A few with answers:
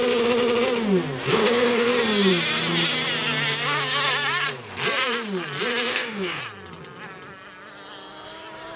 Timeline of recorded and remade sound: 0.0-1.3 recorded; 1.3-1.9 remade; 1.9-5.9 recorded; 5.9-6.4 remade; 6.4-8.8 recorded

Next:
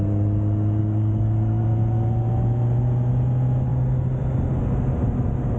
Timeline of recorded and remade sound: 0.0-0.8 recorded; 0.8-1.6 remade; 1.6-5.6 recorded

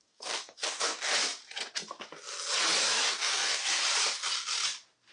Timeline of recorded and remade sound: 0.0-1.1 remade; 1.1-3.1 recorded; 3.1-3.6 remade; 3.6-5.1 recorded

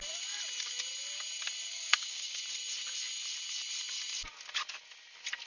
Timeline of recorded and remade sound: 0.0-1.7 recorded; 1.7-2.4 remade; 2.4-5.5 recorded

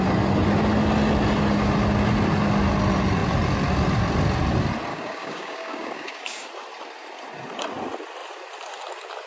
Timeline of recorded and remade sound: 0.0-4.9 recorded; 4.9-6.5 remade; 6.5-9.3 recorded

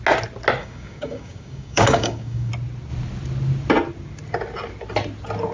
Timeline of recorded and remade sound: 0.0-0.6 recorded; 0.6-2.5 remade; 2.5-5.5 recorded